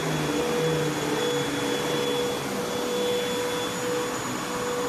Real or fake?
real